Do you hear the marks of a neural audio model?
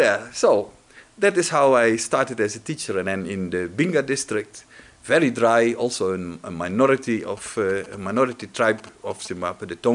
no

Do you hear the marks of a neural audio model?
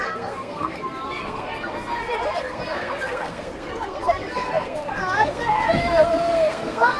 yes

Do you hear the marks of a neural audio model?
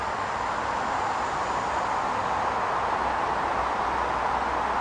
no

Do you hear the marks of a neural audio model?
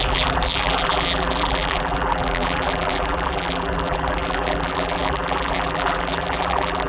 yes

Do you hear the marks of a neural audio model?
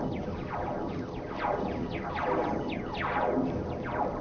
no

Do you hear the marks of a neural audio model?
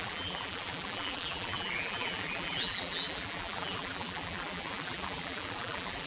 yes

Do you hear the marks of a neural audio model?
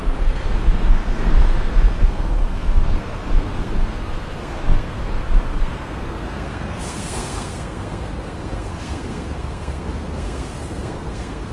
yes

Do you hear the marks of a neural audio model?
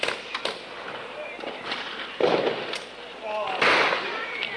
no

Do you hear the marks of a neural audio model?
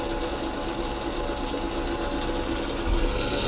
no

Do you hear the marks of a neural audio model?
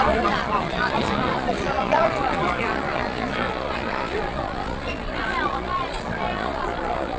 yes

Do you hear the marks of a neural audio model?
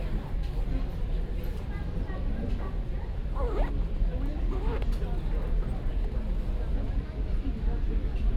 no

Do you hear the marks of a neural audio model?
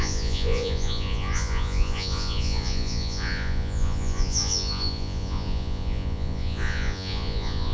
yes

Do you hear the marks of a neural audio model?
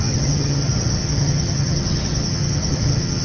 yes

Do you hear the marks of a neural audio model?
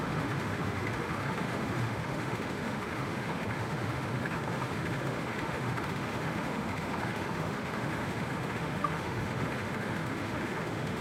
yes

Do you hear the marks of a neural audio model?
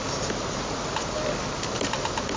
no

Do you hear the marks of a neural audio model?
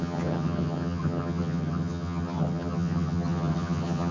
yes